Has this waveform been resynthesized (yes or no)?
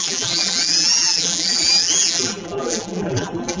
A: yes